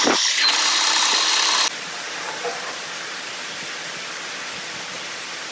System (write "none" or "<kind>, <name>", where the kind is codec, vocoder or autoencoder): none